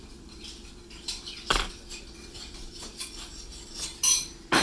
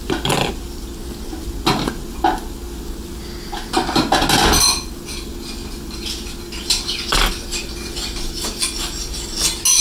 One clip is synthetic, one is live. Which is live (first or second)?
second